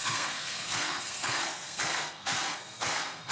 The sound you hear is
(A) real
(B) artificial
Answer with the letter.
B